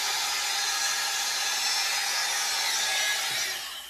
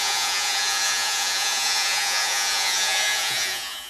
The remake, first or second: second